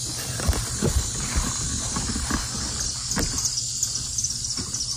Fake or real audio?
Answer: real